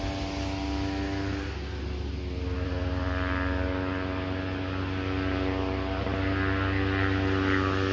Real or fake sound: real